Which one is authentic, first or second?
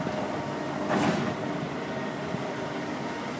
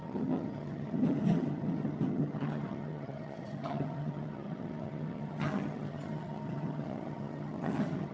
first